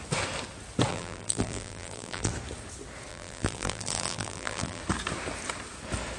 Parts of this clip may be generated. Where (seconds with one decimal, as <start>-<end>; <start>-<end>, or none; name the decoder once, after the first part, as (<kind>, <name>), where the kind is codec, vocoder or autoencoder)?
0.9-2.3 (vocoder, BigVGAN v2); 3.1-4.8